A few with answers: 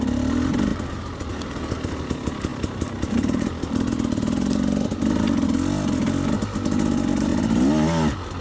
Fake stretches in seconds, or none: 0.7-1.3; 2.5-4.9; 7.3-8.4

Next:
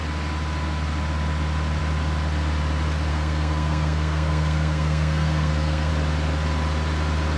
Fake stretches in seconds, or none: 3.1-5.9

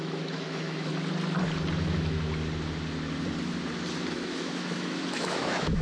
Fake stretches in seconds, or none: 0.0-0.9; 4.1-5.8

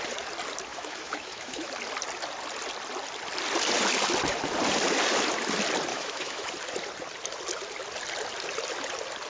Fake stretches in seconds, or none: 0.7-1.7; 5.9-6.5

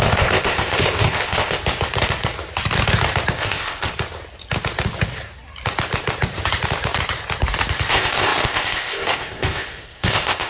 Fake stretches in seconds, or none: 0.0-1.6; 3.3-3.9; 7.9-10.5

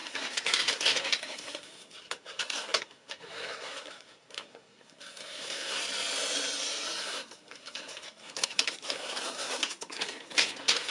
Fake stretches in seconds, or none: 0.0-5.8; 7.0-10.9

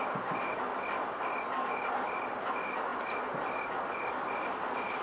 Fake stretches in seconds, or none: none

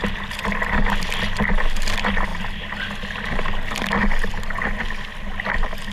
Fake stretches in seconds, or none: none